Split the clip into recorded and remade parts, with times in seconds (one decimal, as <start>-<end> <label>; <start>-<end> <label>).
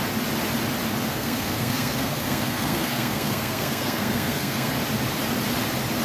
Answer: 0.0-1.1 recorded; 1.1-4.7 remade; 4.7-6.0 recorded